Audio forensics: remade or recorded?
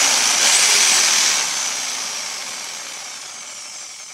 recorded